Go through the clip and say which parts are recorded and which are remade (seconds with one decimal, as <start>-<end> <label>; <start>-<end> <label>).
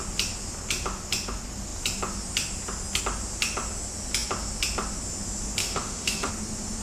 0.0-5.6 recorded; 5.6-6.3 remade; 6.3-6.8 recorded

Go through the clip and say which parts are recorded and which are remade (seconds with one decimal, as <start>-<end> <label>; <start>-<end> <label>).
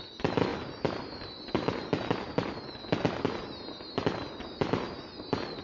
0.0-5.6 recorded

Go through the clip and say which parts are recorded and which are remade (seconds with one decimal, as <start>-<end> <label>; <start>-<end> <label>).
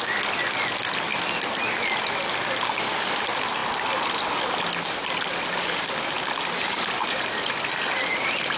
0.0-8.6 recorded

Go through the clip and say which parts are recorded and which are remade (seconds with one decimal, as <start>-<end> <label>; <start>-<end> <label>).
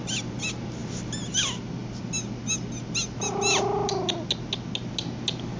0.0-5.6 recorded